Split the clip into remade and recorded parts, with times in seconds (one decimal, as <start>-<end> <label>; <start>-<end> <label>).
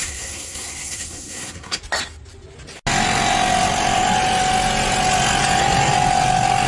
0.0-1.8 remade; 1.8-6.7 recorded